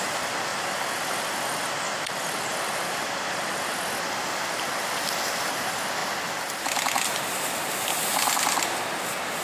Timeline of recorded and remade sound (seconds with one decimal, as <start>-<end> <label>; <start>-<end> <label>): 0.0-0.5 recorded; 0.5-3.8 remade; 3.8-9.4 recorded